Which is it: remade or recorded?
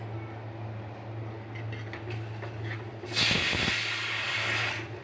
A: recorded